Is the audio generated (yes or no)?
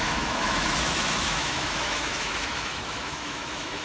yes